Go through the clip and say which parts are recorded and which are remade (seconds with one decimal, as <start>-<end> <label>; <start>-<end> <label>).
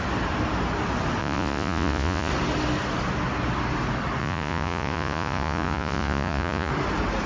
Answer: 0.0-1.2 recorded; 1.2-2.3 remade; 2.3-4.2 recorded; 4.2-6.7 remade; 6.7-7.3 recorded